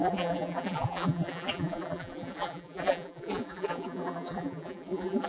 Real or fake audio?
fake